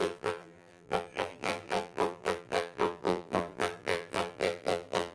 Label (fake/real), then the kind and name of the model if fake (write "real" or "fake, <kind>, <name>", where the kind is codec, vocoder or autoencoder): fake, vocoder, BigVGAN v2